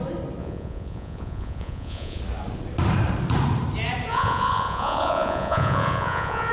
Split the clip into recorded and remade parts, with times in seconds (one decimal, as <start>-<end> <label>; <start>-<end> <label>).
0.0-0.4 recorded; 0.4-2.2 remade; 2.2-4.1 recorded; 4.1-6.5 remade